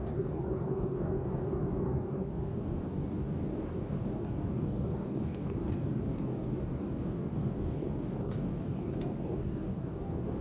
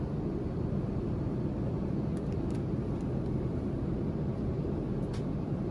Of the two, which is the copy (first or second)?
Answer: first